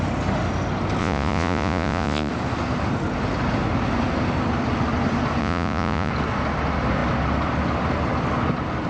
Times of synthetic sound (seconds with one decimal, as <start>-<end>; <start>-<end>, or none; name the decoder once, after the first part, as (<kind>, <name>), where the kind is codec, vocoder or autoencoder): 1.0-2.3 (vocoder, Vocos); 5.4-6.1